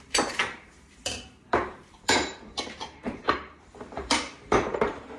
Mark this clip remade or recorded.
remade